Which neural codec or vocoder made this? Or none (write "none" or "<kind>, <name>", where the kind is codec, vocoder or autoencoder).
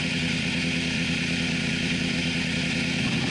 none